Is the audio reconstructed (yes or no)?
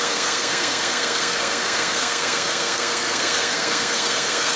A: yes